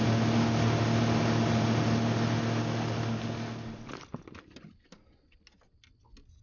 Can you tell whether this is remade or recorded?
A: recorded